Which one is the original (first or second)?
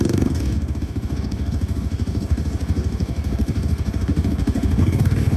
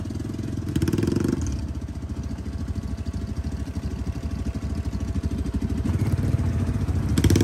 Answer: second